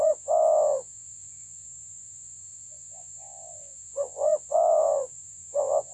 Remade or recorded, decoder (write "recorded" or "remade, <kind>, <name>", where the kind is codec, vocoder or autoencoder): remade, vocoder, Vocos